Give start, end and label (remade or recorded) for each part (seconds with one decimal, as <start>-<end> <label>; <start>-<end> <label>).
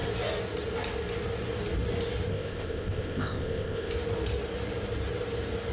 0.0-2.3 recorded; 2.3-3.9 remade; 3.9-5.7 recorded